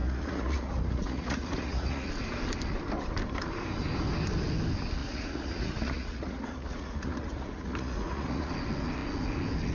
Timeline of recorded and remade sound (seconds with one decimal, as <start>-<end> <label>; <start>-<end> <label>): 0.0-2.1 remade; 2.1-5.0 recorded; 5.0-8.5 remade; 8.5-9.7 recorded